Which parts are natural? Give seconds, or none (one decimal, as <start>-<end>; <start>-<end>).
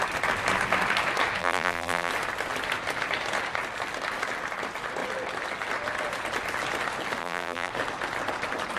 0.0-1.4; 2.1-7.2; 7.7-8.8